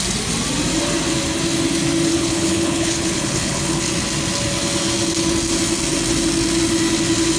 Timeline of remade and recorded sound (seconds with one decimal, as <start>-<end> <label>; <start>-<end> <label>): 0.0-2.1 recorded; 2.1-3.9 remade; 3.9-7.4 recorded